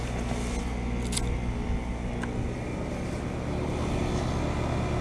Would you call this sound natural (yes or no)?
yes